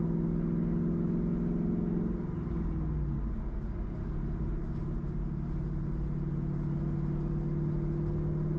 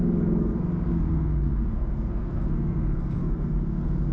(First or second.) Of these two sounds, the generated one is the second